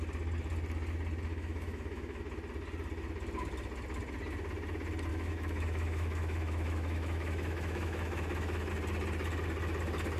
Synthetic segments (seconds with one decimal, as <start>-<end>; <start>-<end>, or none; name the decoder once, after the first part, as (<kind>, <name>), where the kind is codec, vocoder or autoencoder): 1.3-2.2 (autoencoder, DAC-VAE); 5.1-8.7